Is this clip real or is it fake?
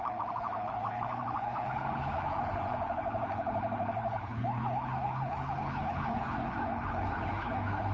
fake